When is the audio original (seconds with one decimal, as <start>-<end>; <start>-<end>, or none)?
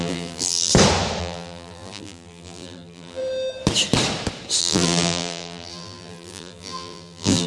0.7-1.2; 3.2-4.6